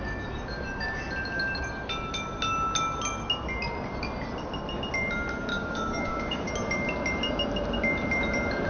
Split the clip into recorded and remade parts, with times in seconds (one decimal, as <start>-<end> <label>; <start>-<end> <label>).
0.0-5.5 recorded; 5.5-6.5 remade; 6.5-8.7 recorded